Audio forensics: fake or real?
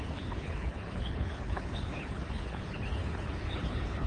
fake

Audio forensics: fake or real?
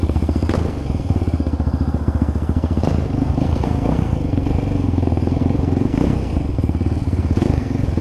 fake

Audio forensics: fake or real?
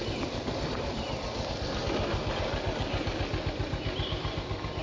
real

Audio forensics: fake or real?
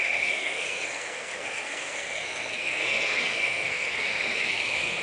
fake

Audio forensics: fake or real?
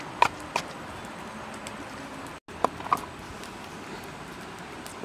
real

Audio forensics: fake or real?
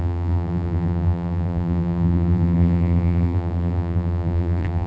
fake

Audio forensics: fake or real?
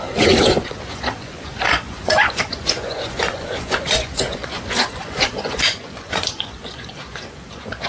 fake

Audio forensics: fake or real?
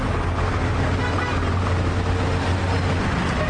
real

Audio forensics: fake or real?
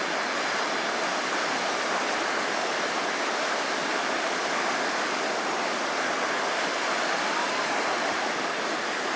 real